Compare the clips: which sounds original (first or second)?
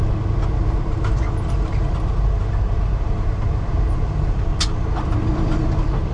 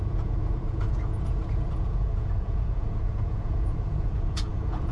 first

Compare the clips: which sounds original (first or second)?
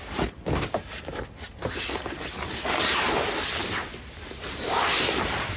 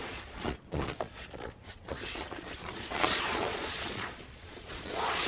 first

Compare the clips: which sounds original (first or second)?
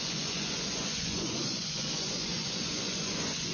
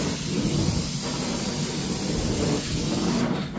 second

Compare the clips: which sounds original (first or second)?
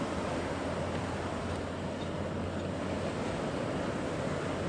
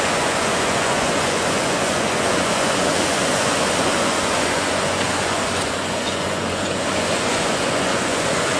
first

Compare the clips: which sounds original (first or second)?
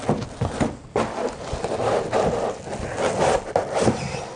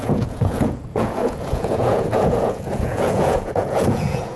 first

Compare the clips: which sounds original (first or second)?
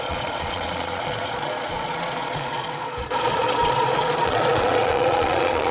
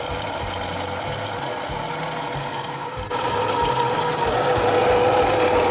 second